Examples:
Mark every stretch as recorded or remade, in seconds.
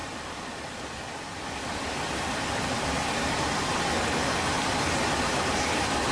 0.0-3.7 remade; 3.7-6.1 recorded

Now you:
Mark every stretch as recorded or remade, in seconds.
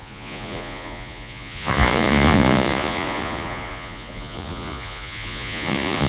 0.0-6.1 remade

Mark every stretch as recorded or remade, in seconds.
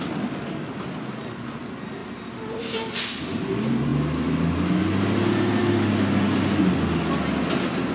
0.0-7.9 recorded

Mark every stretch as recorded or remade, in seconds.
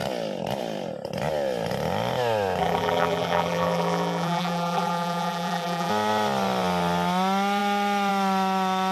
0.0-2.6 recorded; 2.6-5.9 remade; 5.9-8.9 recorded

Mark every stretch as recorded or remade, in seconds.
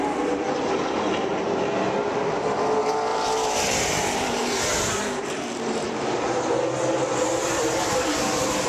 0.0-3.1 recorded; 3.1-6.5 remade; 6.5-7.2 recorded; 7.2-8.7 remade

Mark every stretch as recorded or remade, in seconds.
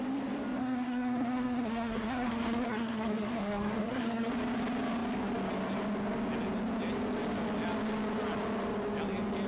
0.0-0.6 recorded; 0.6-4.3 remade; 4.3-9.5 recorded